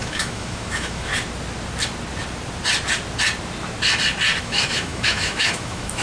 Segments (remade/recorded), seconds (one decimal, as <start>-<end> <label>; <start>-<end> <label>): 0.0-1.1 remade; 1.1-4.4 recorded; 4.4-6.0 remade